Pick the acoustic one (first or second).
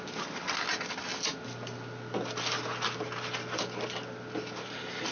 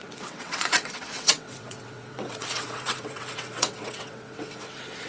first